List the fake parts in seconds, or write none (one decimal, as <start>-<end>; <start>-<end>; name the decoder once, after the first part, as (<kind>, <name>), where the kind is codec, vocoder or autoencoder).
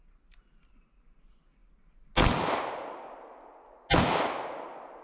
none